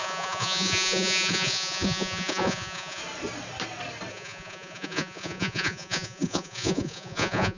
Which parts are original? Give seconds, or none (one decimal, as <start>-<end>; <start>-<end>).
3.0-4.1